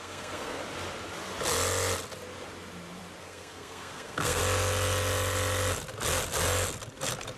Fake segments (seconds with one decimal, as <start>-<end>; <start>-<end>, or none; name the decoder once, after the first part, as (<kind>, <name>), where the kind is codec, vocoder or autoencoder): 0.0-0.6 (codec, SNAC); 3.2-4.4